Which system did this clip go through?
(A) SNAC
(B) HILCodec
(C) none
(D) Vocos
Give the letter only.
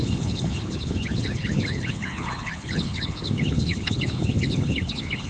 B